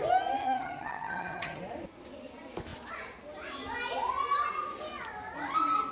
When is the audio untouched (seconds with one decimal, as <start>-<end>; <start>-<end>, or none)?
0.0-0.4; 1.6-5.9